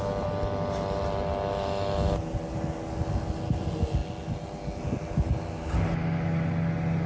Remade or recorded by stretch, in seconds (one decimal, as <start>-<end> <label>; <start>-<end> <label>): 0.0-7.1 recorded